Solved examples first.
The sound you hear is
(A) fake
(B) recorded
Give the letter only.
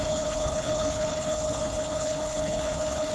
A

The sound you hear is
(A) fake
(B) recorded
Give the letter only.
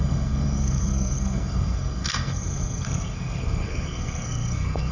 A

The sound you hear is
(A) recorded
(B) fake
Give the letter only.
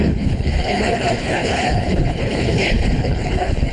B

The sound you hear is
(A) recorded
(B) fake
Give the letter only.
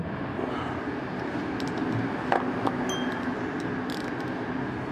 A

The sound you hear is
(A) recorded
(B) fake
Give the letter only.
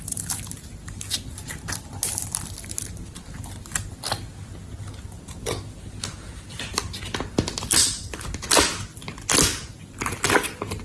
A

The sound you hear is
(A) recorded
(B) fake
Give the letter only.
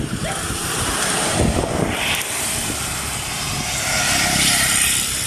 A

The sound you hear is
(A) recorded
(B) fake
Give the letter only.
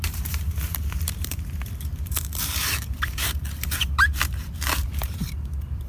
B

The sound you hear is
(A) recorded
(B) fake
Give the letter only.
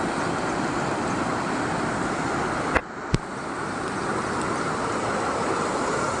A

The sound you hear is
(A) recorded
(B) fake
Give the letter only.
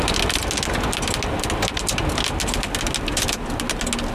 A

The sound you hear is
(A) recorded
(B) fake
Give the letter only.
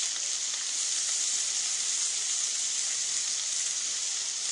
A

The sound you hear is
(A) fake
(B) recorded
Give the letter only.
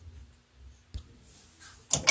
B